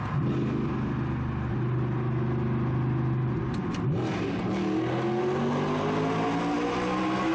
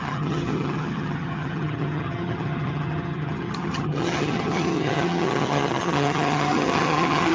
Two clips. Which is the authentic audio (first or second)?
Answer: first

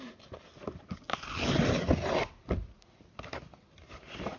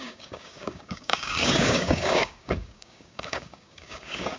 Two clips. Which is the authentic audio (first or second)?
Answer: first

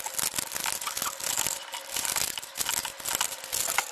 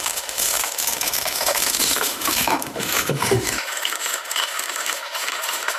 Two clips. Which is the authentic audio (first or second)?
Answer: first